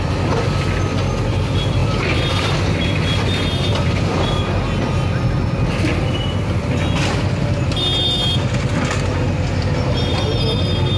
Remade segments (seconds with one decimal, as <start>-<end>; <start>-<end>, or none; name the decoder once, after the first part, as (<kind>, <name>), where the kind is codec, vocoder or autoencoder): none